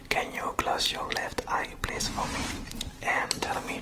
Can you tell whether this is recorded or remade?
remade